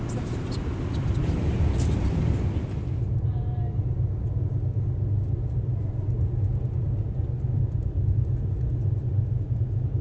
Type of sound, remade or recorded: recorded